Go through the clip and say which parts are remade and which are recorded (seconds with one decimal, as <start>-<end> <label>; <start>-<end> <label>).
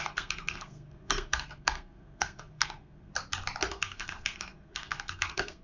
0.0-3.1 remade; 3.1-3.7 recorded; 3.7-5.6 remade